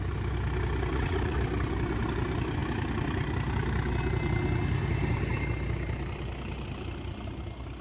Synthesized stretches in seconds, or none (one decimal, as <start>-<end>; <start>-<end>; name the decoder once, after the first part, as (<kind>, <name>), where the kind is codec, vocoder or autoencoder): 0.9-1.4 (vocoder, Vocos)